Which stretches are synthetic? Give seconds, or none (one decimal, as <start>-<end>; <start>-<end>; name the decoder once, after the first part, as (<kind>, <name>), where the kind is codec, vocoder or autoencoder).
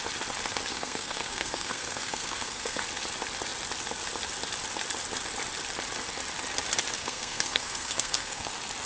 0.7-2.8 (codec, SNAC); 7.0-8.5